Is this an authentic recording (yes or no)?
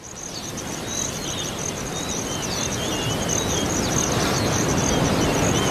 yes